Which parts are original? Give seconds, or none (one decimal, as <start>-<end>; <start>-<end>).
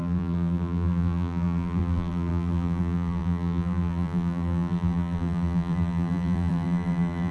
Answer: none